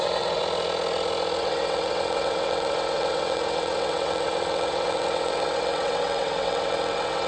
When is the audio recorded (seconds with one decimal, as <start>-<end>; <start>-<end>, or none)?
0.4-1.4

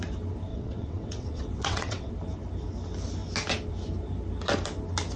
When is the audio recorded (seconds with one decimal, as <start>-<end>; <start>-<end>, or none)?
0.0-0.5; 2.1-5.2